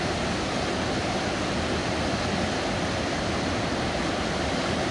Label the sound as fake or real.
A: real